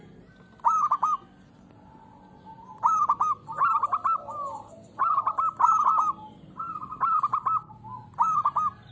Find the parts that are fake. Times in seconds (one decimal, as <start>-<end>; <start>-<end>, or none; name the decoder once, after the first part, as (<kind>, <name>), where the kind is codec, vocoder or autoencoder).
none